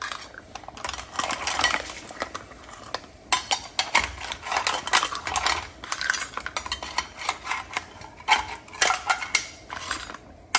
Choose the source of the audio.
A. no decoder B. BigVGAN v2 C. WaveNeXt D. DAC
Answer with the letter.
A